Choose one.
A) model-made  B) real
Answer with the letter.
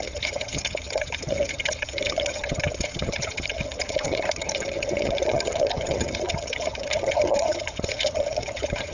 A